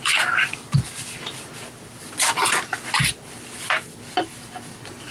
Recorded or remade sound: recorded